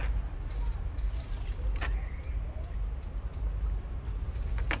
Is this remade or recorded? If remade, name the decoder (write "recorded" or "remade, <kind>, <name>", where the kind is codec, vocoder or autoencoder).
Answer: recorded